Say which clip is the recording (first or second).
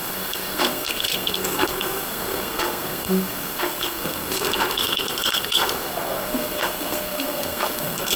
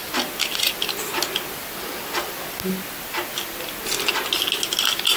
second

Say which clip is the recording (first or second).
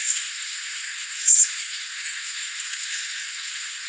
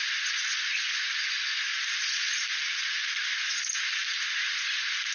second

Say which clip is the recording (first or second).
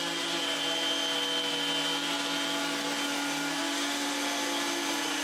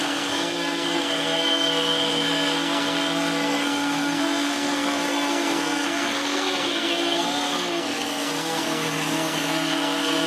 first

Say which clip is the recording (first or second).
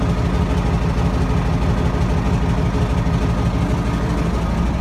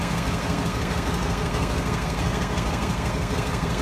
first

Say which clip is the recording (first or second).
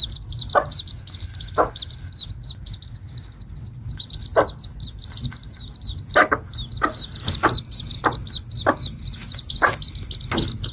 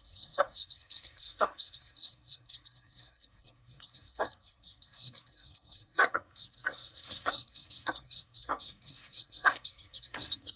first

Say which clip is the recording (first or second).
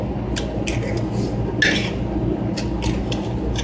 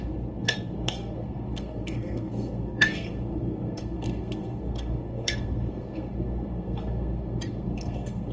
first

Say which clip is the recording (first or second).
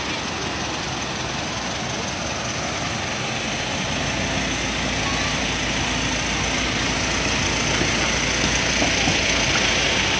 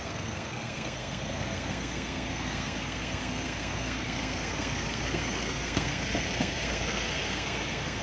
first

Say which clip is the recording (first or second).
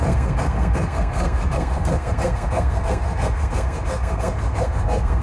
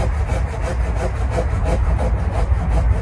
second